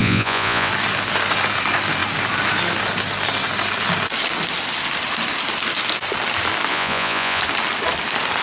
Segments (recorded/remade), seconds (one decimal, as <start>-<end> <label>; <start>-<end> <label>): 0.0-0.7 remade; 0.7-6.7 recorded; 6.7-7.4 remade; 7.4-8.4 recorded